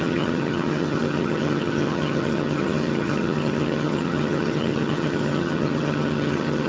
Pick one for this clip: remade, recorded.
remade